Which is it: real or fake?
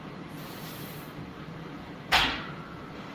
fake